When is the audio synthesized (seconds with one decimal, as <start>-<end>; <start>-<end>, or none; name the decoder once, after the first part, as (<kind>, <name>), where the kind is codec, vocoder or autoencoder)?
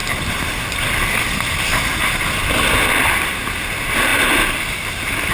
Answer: none